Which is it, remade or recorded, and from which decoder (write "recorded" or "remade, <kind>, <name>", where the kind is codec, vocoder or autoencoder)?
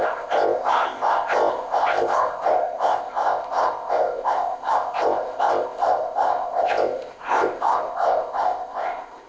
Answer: remade, codec, ZipCodec